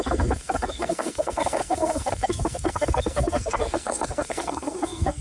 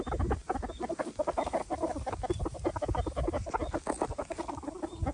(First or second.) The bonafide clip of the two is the second